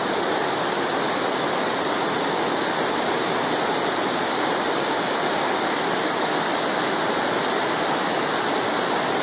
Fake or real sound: real